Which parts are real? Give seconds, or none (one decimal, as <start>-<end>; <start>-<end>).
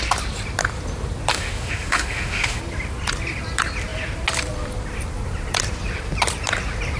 0.0-1.3; 2.6-7.0